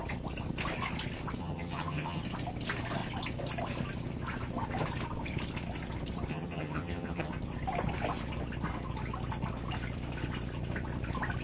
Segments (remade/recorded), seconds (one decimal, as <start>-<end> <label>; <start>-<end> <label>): 0.0-1.4 recorded; 1.4-2.2 remade; 2.2-6.3 recorded; 6.3-7.3 remade; 7.3-11.4 recorded